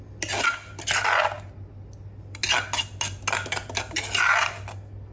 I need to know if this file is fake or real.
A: real